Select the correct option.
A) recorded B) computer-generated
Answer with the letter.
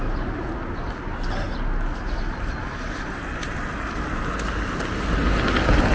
A